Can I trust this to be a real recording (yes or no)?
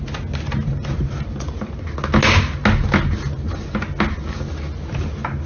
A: yes